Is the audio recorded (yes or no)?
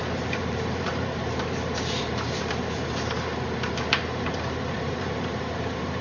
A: no